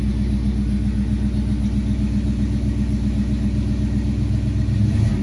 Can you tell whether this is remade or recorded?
recorded